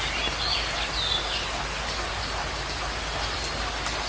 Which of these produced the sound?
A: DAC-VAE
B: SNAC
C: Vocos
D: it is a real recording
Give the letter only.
D